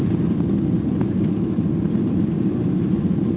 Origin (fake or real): real